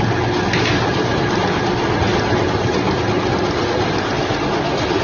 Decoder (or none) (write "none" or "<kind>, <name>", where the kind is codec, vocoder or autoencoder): none